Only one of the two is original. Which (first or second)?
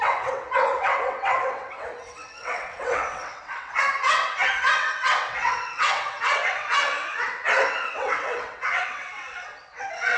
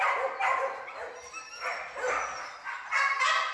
second